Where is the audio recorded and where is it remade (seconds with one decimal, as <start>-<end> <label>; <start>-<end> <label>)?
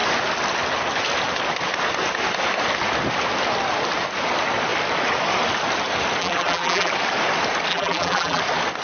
0.0-6.2 recorded; 6.2-6.9 remade; 6.9-7.7 recorded; 7.7-8.4 remade; 8.4-8.8 recorded